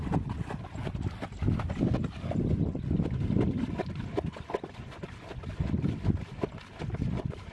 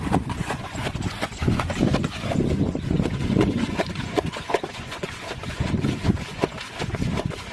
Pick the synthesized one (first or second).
second